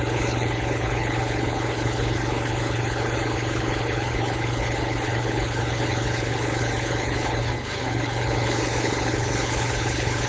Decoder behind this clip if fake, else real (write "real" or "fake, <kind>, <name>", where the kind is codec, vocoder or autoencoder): fake, codec, HILCodec